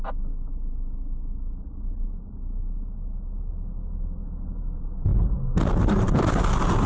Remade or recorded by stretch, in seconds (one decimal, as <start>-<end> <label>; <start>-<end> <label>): 0.0-5.1 recorded; 5.1-5.6 remade; 5.6-6.9 recorded